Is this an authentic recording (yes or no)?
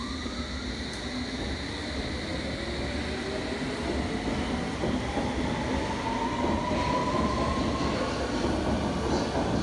yes